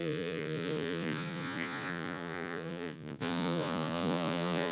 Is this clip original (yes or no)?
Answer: no